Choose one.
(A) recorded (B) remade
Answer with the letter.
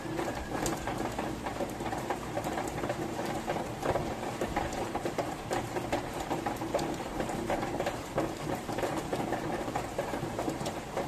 B